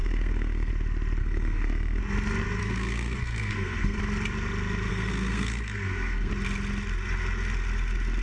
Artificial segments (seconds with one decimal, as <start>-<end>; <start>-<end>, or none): 0.0-0.7; 1.2-2.0; 2.6-4.0; 4.9-6.3